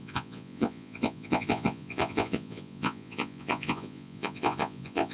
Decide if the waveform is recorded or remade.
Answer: remade